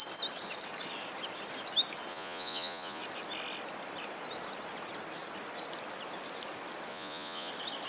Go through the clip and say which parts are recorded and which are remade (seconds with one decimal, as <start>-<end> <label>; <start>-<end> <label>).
0.0-2.1 recorded; 2.1-3.0 remade; 3.0-6.9 recorded; 6.9-7.5 remade; 7.5-7.9 recorded